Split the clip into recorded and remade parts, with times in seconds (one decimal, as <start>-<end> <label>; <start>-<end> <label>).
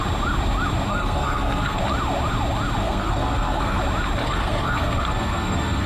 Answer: 0.0-0.9 recorded; 0.9-1.8 remade; 1.8-2.8 recorded; 2.8-3.8 remade; 3.8-4.2 recorded; 4.2-5.9 remade